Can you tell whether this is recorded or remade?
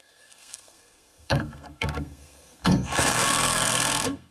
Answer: remade